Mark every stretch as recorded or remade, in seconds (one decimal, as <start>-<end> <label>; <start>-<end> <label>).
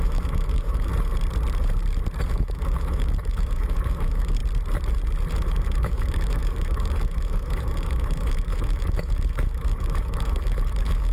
0.0-0.9 remade; 0.9-2.3 recorded; 2.3-4.4 remade; 4.4-5.3 recorded; 5.3-11.1 remade